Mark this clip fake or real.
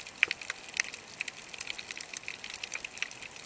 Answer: real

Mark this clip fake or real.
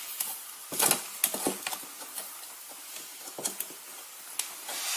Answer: real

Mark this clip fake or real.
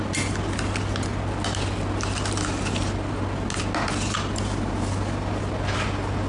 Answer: real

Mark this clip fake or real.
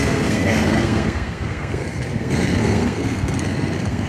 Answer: fake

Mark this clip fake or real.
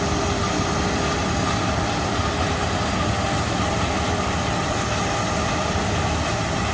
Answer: real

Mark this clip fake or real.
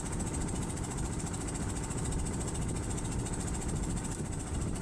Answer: real